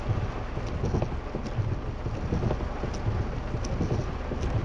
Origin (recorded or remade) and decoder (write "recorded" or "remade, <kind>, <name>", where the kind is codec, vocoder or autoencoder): recorded